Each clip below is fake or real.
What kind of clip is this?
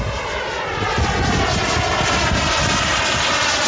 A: real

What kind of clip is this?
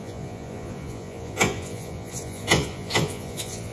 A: fake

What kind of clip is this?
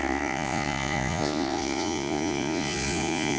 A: fake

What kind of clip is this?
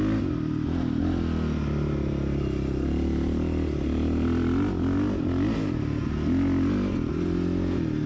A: real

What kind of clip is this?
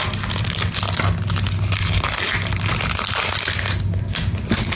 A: real